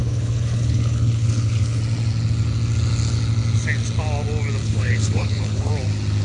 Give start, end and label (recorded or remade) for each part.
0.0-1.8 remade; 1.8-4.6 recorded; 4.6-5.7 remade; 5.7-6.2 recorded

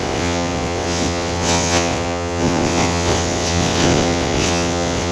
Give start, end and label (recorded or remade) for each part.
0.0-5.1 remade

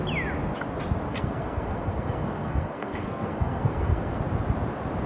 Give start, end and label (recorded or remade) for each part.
0.0-1.1 recorded; 1.1-4.2 remade; 4.2-5.1 recorded